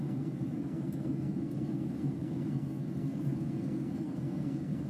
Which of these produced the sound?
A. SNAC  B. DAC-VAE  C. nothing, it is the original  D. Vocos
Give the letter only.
A